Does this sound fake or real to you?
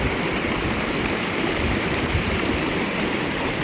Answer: real